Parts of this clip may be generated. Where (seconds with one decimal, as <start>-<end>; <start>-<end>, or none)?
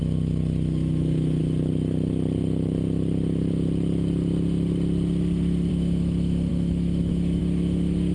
0.0-1.4; 5.7-8.1